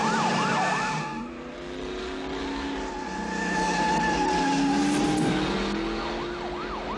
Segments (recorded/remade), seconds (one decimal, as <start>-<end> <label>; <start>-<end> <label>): 0.0-7.0 recorded